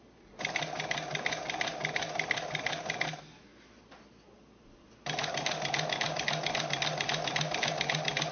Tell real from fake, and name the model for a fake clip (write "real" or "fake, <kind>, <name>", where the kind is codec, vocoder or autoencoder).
real